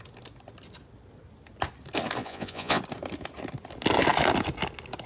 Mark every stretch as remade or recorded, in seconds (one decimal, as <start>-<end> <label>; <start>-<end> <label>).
0.0-2.2 recorded; 2.2-2.8 remade; 2.8-5.1 recorded